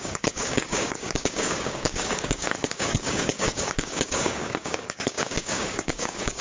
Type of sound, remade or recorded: remade